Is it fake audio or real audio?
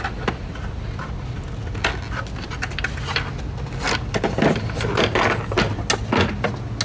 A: real